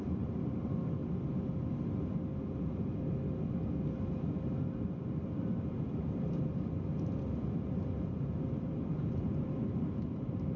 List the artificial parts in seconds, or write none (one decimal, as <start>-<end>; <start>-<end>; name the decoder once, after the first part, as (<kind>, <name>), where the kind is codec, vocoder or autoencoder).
0.0-1.0 (vocoder, BigVGAN v2); 4.8-10.6